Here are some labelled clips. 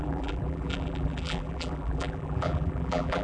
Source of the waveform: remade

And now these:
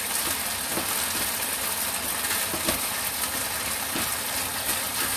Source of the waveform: recorded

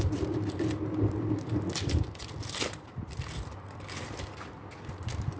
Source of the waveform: recorded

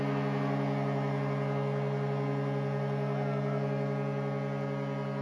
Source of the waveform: recorded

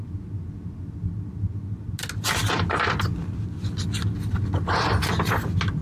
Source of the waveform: recorded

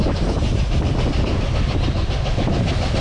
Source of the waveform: recorded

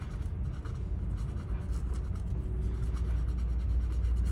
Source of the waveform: recorded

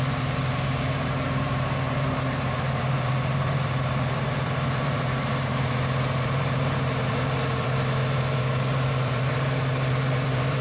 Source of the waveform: remade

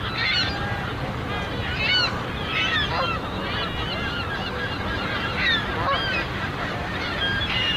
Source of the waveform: recorded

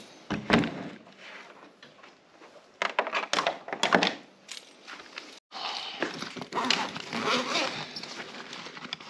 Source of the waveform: recorded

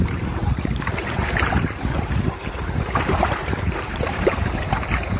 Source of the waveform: remade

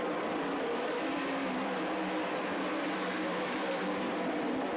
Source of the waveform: remade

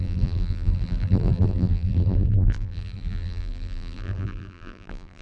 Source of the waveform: remade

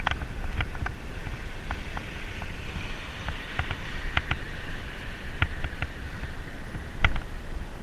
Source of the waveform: remade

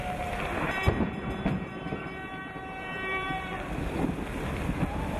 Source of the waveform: remade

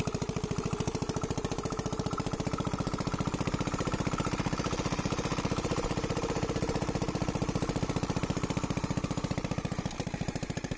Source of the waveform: remade